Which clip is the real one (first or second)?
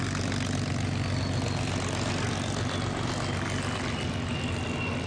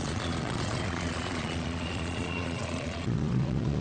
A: first